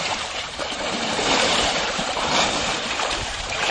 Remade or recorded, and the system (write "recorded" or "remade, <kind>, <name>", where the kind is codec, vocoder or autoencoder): remade, vocoder, BigVGAN v2